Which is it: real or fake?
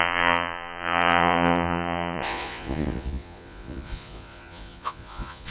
fake